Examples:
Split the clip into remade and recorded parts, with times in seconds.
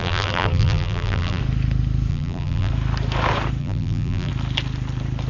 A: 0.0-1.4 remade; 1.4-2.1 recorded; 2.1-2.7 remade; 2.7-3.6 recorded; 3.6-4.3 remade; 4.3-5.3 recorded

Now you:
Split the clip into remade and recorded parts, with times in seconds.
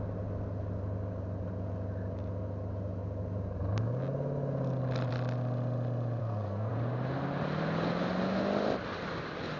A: 0.0-6.2 recorded; 6.2-6.7 remade; 6.7-9.6 recorded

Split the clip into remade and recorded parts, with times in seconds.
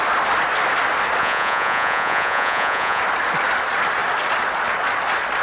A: 0.0-1.2 recorded; 1.2-3.0 remade; 3.0-5.4 recorded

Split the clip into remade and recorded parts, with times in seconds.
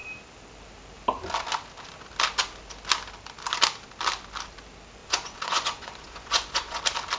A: 0.0-5.0 recorded; 5.0-6.8 remade; 6.8-7.2 recorded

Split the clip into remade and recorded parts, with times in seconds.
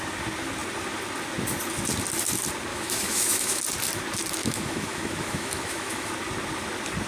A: 0.0-2.7 recorded; 2.7-3.6 remade; 3.6-4.4 recorded; 4.4-6.1 remade; 6.1-7.1 recorded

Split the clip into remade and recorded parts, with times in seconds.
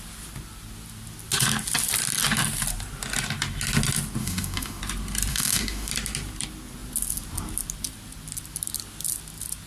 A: 0.0-4.2 recorded; 4.2-4.8 remade; 4.8-5.3 recorded; 5.3-5.9 remade; 5.9-9.7 recorded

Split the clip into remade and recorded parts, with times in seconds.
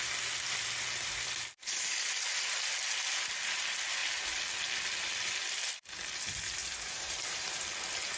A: 0.0-6.6 recorded; 6.6-7.6 remade; 7.6-8.2 recorded